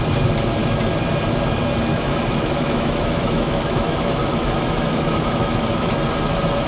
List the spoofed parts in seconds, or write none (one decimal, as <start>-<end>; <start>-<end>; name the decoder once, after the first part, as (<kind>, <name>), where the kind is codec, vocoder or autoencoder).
1.9-5.9 (autoencoder, DAC-VAE)